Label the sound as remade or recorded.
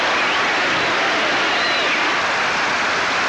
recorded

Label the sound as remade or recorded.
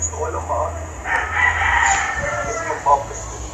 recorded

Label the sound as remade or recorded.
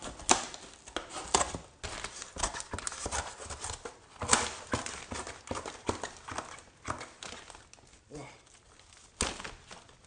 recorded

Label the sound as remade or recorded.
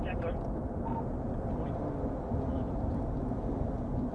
recorded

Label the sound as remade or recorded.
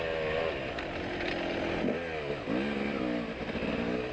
recorded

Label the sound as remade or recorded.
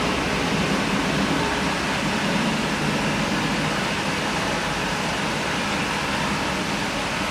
recorded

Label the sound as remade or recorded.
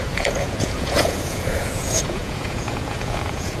remade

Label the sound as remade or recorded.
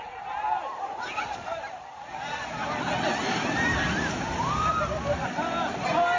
recorded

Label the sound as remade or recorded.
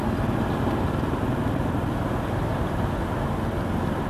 recorded